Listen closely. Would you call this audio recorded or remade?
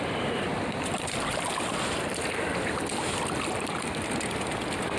remade